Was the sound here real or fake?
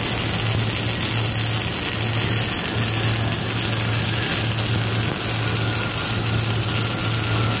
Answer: real